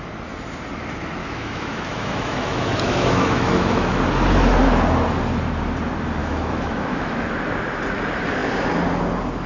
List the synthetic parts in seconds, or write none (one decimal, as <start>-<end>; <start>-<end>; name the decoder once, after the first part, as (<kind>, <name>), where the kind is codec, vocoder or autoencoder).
1.2-4.0 (autoencoder, DAC-VAE); 6.2-7.3